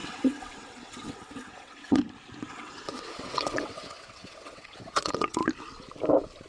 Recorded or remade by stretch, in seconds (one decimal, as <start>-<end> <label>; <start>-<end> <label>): 0.0-2.0 remade; 2.0-2.5 recorded; 2.5-5.4 remade; 5.4-6.5 recorded